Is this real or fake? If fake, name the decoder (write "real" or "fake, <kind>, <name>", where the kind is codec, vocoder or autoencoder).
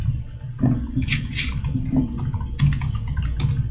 real